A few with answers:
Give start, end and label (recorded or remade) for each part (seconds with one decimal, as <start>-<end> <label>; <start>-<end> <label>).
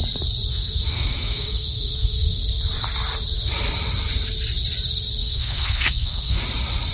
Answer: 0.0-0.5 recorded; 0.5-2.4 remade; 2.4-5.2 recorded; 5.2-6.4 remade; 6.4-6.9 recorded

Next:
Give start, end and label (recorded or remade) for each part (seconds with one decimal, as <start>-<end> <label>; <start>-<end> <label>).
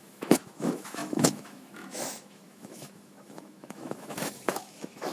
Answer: 0.0-5.1 remade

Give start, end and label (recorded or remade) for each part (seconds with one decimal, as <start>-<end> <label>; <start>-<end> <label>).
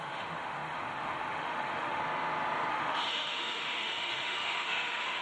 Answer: 0.0-2.0 remade; 2.0-2.7 recorded; 2.7-5.2 remade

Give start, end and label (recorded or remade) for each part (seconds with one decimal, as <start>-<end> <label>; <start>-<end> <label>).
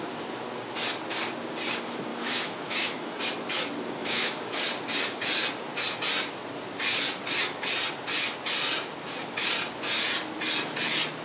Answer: 0.0-2.1 recorded; 2.1-3.2 remade; 3.2-4.0 recorded; 4.0-4.6 remade; 4.6-11.2 recorded